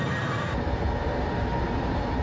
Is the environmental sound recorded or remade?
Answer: remade